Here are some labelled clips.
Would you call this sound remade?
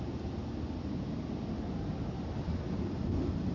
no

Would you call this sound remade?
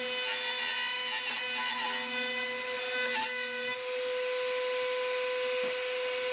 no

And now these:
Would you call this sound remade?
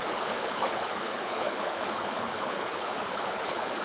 yes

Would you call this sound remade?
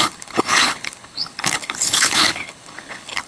yes